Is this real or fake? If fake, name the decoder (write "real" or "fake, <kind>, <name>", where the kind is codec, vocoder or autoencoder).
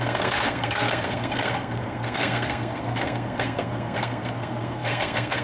fake, codec, SNAC